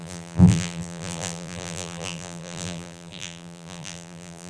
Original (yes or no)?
no